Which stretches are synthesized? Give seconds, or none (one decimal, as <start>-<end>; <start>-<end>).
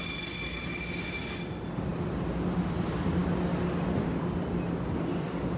none